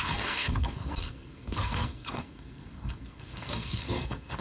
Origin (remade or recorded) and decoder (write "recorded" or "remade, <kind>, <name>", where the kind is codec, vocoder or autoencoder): remade, codec, SNAC